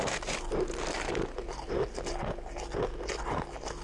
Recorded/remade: recorded